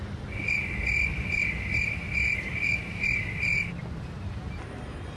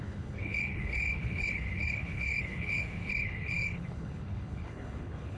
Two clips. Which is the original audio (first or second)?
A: first